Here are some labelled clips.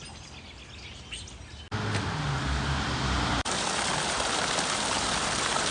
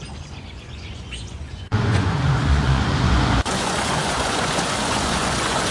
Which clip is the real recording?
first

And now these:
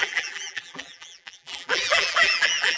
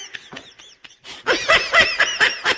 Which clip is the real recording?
second